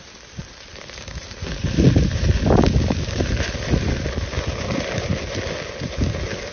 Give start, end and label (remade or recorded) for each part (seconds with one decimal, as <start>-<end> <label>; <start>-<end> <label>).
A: 0.0-0.4 recorded; 0.4-4.3 remade; 4.3-6.5 recorded